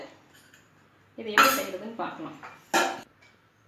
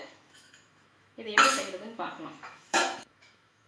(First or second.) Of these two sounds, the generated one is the second